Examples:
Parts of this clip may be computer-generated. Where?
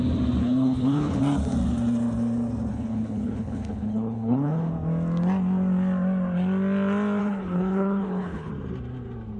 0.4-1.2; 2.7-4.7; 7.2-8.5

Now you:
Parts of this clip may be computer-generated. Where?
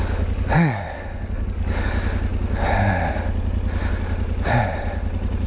0.0-1.9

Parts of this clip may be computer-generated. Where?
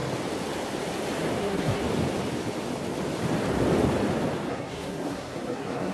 1.4-1.8; 4.5-5.9